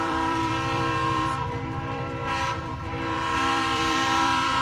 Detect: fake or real fake